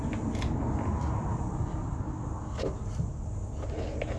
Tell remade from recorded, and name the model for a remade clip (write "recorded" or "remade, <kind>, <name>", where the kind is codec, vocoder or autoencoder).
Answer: recorded